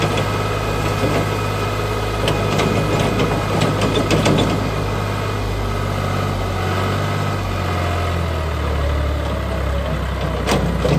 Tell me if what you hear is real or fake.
real